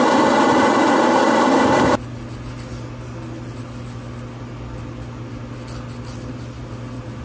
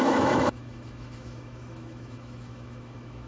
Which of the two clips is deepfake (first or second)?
second